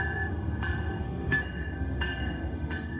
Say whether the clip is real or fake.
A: fake